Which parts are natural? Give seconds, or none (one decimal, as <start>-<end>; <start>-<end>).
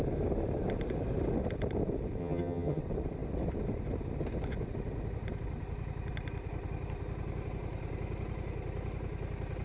0.0-2.2; 2.8-9.6